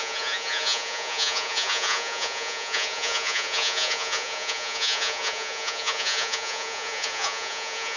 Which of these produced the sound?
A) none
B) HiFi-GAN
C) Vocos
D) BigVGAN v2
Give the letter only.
C